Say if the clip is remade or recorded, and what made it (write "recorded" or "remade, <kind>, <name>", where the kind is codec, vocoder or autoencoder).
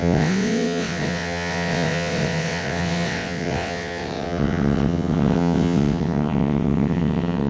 remade, vocoder, WaveNeXt